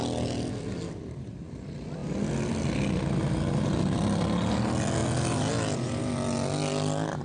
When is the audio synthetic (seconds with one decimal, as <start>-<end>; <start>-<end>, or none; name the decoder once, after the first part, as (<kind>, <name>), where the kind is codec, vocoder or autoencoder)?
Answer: none